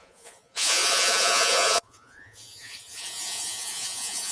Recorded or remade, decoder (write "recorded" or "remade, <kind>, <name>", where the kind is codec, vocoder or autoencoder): remade, vocoder, Vocos